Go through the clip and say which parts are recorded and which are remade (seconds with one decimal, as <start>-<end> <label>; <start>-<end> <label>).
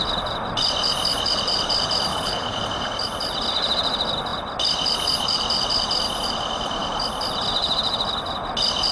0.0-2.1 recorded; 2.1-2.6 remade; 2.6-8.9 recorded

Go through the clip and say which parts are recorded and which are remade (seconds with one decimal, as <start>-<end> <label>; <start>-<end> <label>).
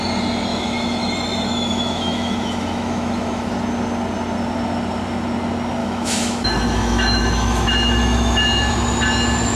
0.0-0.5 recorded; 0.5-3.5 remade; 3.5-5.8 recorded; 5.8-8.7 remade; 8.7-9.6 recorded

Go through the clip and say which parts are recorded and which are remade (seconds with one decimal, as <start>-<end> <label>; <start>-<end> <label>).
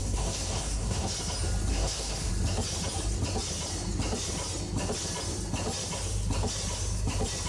0.0-1.1 remade; 1.1-1.7 recorded; 1.7-2.3 remade; 2.3-7.5 recorded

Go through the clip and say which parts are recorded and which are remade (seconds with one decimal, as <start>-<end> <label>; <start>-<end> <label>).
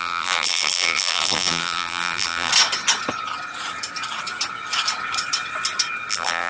0.0-2.5 remade; 2.5-6.1 recorded; 6.1-6.5 remade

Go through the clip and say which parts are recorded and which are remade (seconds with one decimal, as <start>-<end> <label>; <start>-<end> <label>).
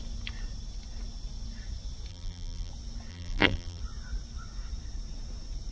0.0-2.1 recorded; 2.1-2.7 remade; 2.7-3.1 recorded; 3.1-3.8 remade; 3.8-5.7 recorded